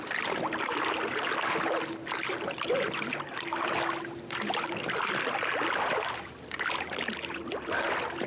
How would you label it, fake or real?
real